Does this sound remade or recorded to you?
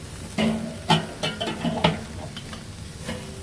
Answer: recorded